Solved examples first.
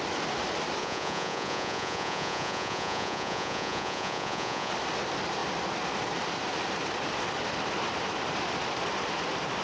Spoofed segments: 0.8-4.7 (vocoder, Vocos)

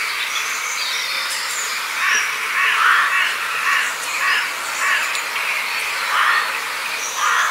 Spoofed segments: 1.4-4.2 (vocoder, BigVGAN v2); 5.0-6.9

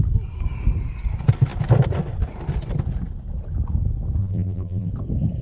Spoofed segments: 4.2-4.9 (vocoder, BigVGAN v2)

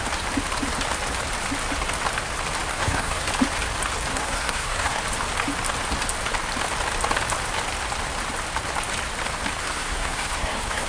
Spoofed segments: 2.7-3.3 (codec, SNAC); 4.1-5.0; 9.6-10.9